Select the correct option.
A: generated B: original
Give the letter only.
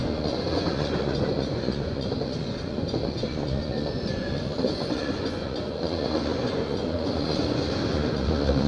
A